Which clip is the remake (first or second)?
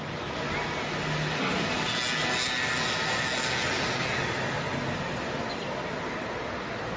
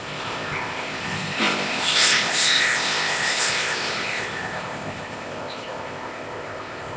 second